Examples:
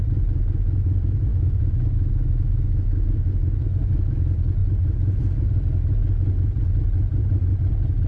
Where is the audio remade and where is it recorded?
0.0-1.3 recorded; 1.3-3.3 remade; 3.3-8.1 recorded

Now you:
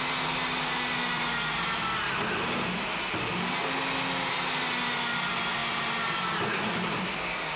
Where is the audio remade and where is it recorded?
0.0-7.6 recorded

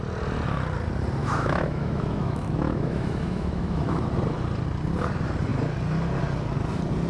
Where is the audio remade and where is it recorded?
0.0-1.2 recorded; 1.2-4.0 remade; 4.0-7.1 recorded

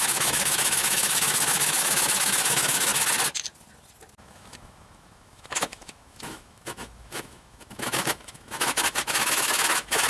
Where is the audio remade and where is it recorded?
0.0-2.9 remade; 2.9-4.2 recorded; 4.2-10.1 remade

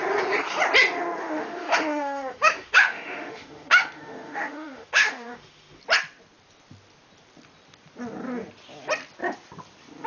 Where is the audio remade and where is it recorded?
0.0-1.2 recorded; 1.2-5.8 remade; 5.8-10.1 recorded

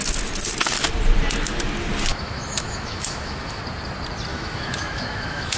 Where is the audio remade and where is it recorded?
0.0-2.1 recorded; 2.1-3.6 remade; 3.6-4.3 recorded; 4.3-5.6 remade

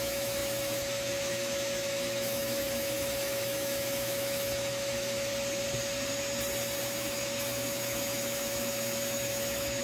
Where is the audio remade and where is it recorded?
0.0-5.3 remade; 5.3-6.8 recorded; 6.8-9.8 remade

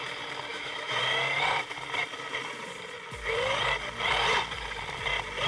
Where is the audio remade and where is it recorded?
0.0-0.5 recorded; 0.5-1.0 remade; 1.0-5.5 recorded